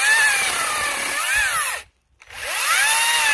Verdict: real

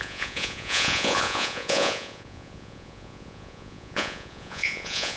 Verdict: fake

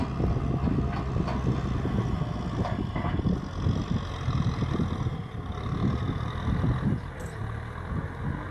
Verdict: real